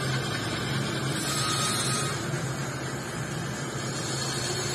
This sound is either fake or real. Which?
real